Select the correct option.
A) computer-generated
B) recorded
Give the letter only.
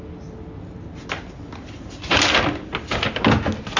B